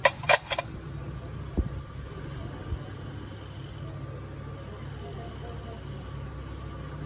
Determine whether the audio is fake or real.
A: real